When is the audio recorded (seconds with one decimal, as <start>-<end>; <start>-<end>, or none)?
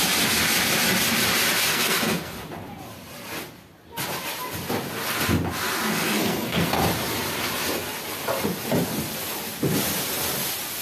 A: 0.0-1.7; 2.3-5.9; 6.8-10.8